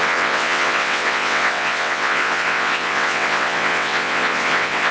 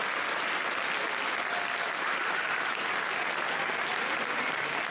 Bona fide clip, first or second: second